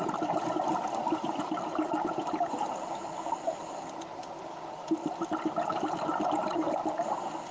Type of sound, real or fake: real